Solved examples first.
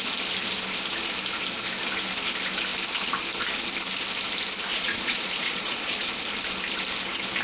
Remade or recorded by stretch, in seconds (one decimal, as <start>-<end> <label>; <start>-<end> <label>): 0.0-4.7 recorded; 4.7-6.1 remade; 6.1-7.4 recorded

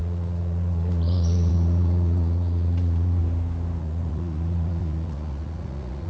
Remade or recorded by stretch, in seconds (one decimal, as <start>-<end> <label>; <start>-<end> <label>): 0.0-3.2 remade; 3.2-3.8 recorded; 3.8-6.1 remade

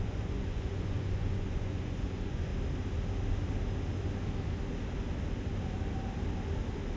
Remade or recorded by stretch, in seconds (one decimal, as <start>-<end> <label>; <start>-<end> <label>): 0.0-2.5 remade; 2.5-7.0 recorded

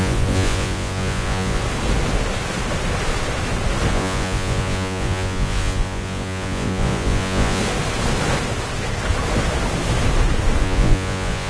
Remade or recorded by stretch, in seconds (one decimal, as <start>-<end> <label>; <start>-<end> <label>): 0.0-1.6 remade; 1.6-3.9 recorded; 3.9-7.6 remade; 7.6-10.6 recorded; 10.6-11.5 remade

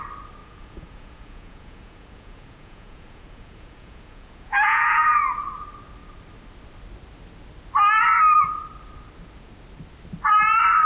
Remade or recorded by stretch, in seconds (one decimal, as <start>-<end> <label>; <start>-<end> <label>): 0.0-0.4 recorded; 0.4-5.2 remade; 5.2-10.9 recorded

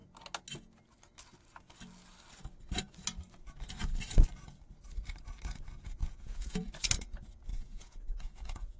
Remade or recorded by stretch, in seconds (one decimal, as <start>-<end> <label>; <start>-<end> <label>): 0.0-6.0 recorded; 6.0-6.6 remade; 6.6-7.5 recorded; 7.5-8.8 remade